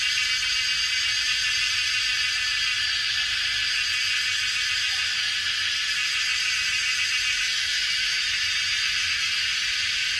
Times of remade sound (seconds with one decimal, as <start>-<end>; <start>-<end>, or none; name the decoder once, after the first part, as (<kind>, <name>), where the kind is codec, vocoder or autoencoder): 7.3-8.2 (autoencoder, DAC-VAE)